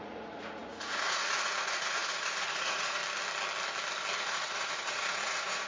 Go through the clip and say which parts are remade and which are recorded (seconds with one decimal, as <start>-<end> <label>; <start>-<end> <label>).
0.0-3.0 remade; 3.0-4.2 recorded; 4.2-5.7 remade